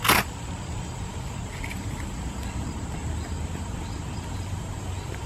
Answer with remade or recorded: recorded